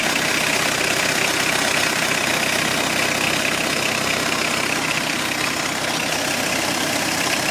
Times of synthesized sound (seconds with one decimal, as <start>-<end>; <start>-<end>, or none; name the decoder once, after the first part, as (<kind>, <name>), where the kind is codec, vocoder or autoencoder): 0.0-2.3 (vocoder, BigVGAN v2); 3.4-7.5

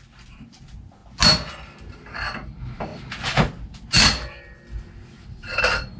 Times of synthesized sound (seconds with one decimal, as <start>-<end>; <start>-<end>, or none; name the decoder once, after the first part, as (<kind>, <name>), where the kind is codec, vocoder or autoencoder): none

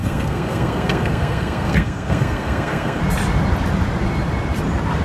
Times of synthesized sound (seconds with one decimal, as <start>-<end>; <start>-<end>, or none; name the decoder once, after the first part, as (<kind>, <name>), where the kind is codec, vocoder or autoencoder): 0.0-3.0 (codec, SNAC)

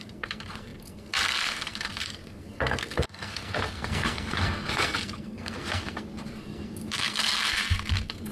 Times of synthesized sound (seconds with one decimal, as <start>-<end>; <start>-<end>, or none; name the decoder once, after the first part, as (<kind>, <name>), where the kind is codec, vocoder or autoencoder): 0.0-8.3 (codec, SNAC)

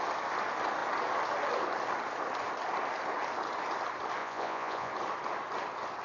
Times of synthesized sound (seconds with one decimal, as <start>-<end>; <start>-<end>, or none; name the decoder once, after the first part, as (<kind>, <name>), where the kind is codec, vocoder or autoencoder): 4.2-4.9 (vocoder, Vocos)